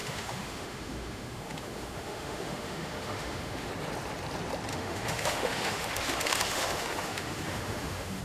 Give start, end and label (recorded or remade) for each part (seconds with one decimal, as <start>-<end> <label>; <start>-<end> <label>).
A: 0.0-3.7 remade; 3.7-4.7 recorded; 4.7-8.2 remade